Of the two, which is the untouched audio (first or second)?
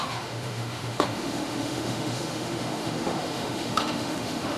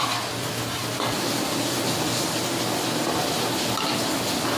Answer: second